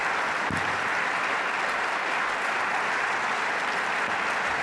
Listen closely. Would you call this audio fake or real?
real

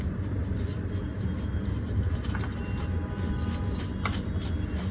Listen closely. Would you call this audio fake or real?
real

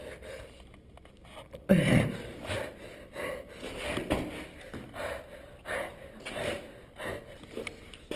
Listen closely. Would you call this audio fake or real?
real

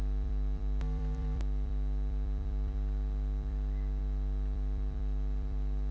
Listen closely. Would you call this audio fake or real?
fake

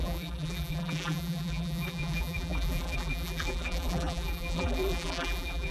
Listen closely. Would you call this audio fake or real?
fake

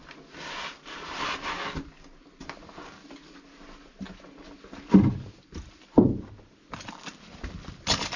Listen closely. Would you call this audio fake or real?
real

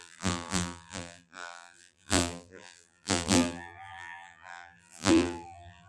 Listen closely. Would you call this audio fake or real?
fake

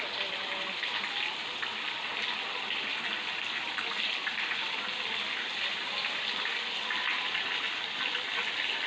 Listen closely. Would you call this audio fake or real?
real